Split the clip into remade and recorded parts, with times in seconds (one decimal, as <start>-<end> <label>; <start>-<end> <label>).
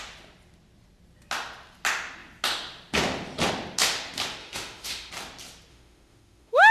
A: 0.0-4.4 recorded; 4.4-5.1 remade; 5.1-5.7 recorded; 5.7-6.7 remade